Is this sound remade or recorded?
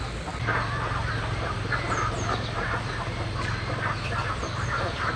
recorded